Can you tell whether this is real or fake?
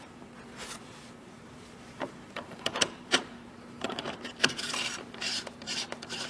fake